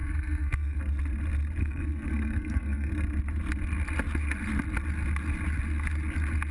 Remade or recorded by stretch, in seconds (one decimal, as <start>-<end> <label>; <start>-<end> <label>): 0.0-0.8 remade; 0.8-1.6 recorded; 1.6-2.9 remade; 2.9-6.5 recorded